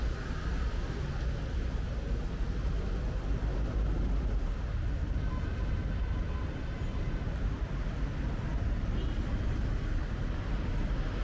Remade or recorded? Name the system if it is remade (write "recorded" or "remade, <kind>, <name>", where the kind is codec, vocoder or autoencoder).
recorded